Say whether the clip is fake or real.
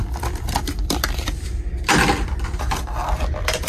real